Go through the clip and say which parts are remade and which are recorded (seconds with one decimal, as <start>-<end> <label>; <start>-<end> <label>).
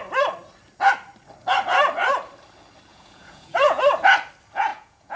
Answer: 0.0-2.9 recorded; 2.9-3.8 remade; 3.8-4.7 recorded; 4.7-5.2 remade